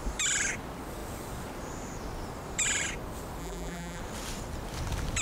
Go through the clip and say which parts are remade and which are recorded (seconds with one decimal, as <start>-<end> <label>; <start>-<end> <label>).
0.0-3.4 recorded; 3.4-4.0 remade; 4.0-5.2 recorded